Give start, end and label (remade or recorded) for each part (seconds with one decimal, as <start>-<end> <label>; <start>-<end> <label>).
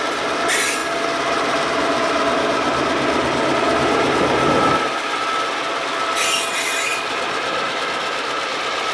0.0-8.9 recorded